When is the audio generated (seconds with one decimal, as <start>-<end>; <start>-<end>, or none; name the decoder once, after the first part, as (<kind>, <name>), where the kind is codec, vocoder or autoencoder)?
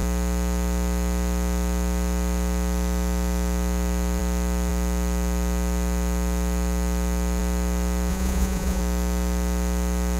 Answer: 8.1-8.8 (vocoder, Vocos)